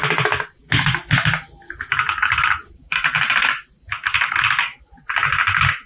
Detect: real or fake real